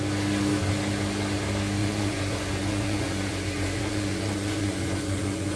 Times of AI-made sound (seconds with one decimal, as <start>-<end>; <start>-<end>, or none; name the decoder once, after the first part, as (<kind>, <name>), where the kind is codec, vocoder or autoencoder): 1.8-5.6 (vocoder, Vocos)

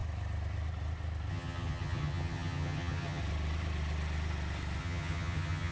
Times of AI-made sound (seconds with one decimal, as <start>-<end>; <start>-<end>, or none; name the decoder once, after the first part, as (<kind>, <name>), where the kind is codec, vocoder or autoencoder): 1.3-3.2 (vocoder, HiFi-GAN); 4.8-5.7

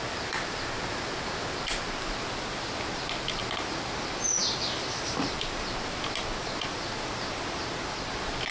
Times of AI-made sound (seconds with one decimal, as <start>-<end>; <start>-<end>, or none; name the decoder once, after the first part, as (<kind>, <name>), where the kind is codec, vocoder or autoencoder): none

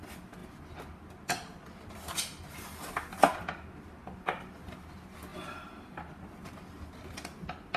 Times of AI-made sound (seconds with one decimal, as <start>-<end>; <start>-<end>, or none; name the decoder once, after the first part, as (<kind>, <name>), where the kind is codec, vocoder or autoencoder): none

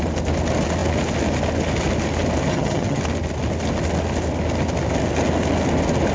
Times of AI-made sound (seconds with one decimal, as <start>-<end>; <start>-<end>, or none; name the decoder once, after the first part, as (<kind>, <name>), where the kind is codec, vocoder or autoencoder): 2.5-3.0 (vocoder, HiFi-GAN)

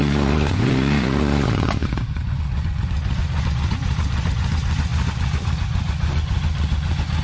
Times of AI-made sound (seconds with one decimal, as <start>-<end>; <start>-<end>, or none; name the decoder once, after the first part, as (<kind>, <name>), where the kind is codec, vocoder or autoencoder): 0.0-7.2 (vocoder, Vocos)

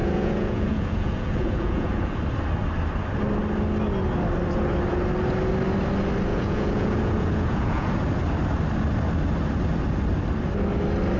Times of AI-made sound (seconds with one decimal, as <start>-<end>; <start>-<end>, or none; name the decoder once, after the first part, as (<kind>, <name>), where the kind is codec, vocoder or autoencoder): 0.0-2.2 (vocoder, Vocos); 6.3-7.9